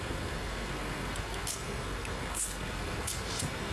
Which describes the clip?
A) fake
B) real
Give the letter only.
A